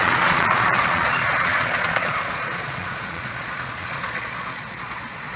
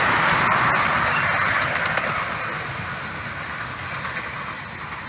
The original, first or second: second